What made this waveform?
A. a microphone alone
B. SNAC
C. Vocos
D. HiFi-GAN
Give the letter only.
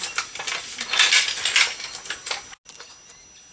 A